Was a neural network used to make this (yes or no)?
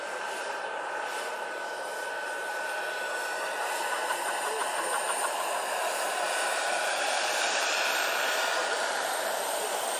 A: yes